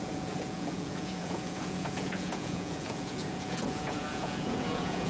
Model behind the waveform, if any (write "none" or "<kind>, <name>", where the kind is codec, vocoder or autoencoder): vocoder, Vocos